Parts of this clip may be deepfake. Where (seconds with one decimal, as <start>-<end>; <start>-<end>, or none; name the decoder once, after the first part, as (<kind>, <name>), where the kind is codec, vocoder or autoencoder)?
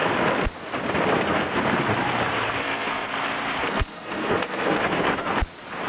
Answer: 2.6-3.1 (codec, SNAC); 3.6-5.3